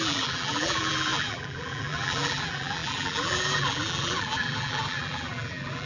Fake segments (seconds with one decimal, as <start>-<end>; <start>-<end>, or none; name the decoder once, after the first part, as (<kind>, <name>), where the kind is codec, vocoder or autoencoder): 0.0-5.9 (vocoder, BigVGAN v2)